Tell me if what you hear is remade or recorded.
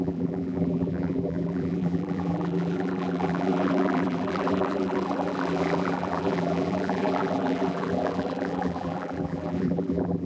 remade